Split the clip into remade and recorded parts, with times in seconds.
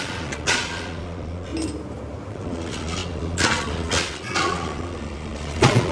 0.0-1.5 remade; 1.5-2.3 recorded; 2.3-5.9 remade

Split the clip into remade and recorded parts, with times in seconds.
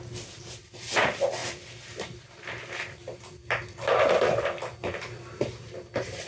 0.0-6.3 recorded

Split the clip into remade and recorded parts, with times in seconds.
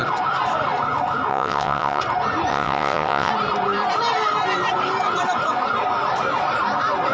0.0-1.3 recorded; 1.3-2.0 remade; 2.0-2.5 recorded; 2.5-3.3 remade; 3.3-7.1 recorded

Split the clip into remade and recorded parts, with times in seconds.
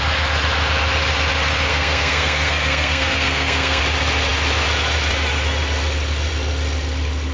0.0-1.7 recorded; 1.7-3.8 remade; 3.8-7.3 recorded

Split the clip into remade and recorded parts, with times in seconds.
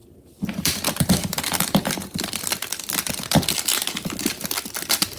0.0-3.7 remade; 3.7-5.2 recorded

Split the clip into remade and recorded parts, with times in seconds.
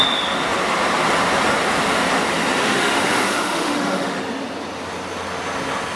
0.0-2.6 recorded; 2.6-4.2 remade; 4.2-6.0 recorded